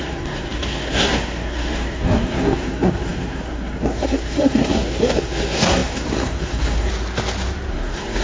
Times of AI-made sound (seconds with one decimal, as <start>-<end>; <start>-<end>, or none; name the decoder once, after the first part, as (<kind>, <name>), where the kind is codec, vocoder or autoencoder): 0.0-6.9 (codec, SNAC); 7.7-8.2